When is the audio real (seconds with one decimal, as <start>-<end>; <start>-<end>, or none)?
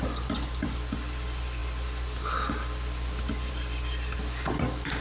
0.0-5.0